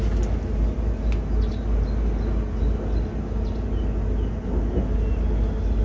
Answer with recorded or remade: recorded